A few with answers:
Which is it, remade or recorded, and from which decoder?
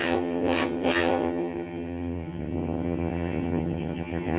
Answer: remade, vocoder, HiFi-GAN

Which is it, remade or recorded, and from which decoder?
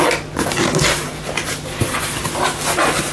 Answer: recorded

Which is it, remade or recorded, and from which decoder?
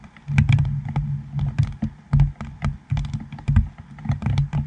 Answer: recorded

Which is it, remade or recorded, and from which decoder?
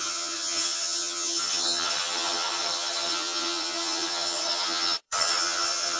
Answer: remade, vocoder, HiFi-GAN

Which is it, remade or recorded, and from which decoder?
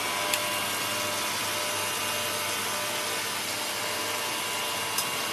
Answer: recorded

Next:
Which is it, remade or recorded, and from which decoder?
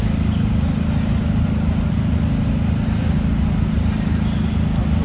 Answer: recorded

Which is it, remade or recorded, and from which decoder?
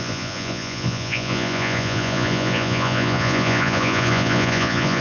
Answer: remade, vocoder, Vocos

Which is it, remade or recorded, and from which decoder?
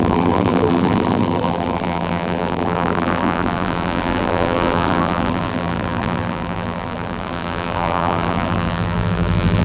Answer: remade, vocoder, BigVGAN v2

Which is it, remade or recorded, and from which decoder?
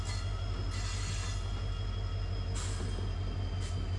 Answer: recorded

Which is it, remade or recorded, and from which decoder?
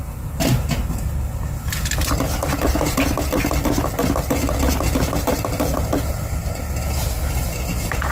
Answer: recorded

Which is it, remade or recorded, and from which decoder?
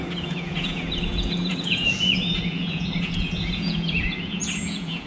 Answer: remade, vocoder, Vocos